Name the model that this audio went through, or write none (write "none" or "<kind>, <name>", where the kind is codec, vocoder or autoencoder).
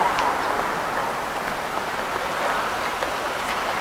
none